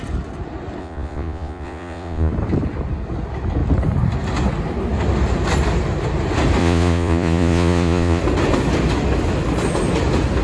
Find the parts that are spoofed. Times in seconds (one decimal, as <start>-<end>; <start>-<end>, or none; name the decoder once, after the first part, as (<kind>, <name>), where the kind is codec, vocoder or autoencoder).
0.8-2.3 (vocoder, Vocos); 6.6-8.2